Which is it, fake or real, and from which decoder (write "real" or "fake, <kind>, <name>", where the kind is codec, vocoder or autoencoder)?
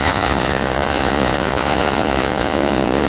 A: fake, vocoder, Vocos